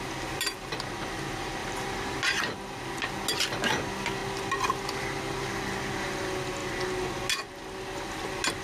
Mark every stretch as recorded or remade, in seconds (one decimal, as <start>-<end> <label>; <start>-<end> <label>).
0.0-1.6 recorded; 1.6-2.2 remade; 2.2-8.6 recorded